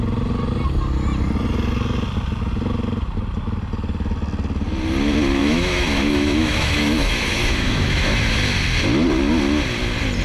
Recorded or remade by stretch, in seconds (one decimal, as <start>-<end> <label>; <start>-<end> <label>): 0.0-5.4 recorded; 5.4-8.3 remade; 8.3-10.2 recorded